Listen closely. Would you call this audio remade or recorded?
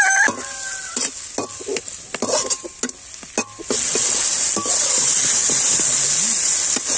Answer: recorded